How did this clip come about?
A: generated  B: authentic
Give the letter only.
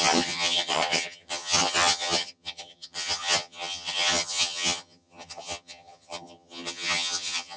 A